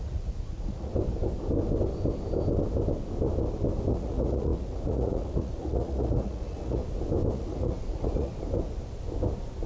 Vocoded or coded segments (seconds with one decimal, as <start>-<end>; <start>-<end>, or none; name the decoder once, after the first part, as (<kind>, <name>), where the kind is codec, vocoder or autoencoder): 0.0-0.9 (vocoder, Vocos); 3.9-6.8; 7.3-8.3